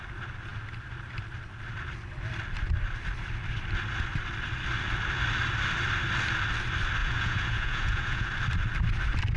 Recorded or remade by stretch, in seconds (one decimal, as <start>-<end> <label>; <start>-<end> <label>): 0.0-7.0 recorded; 7.0-8.3 remade; 8.3-9.4 recorded

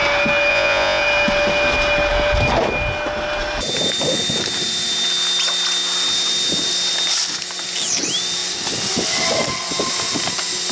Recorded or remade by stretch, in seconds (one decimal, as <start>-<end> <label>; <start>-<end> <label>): 0.0-0.5 recorded; 0.5-1.0 remade; 1.0-10.7 recorded